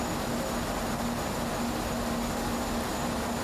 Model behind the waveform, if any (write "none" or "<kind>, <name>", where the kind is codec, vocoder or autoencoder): none